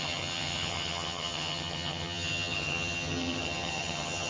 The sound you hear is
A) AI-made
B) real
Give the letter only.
A